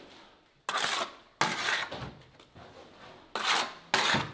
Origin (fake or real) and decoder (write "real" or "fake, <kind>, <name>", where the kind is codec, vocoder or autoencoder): real